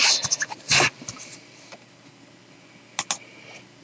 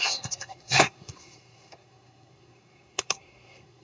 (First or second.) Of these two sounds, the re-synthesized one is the second